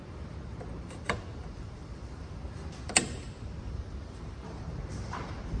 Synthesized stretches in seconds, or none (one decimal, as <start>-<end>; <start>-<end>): 0.8-5.6